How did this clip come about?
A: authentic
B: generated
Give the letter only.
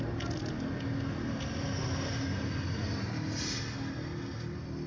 A